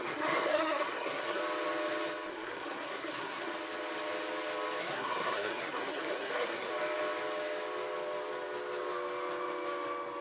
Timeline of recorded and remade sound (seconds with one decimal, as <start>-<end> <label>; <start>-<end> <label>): 0.0-1.4 remade; 1.4-2.3 recorded; 2.3-3.5 remade; 3.5-4.8 recorded; 4.8-6.7 remade; 6.7-10.2 recorded